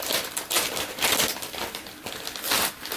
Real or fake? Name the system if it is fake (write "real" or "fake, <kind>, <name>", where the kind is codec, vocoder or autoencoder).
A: real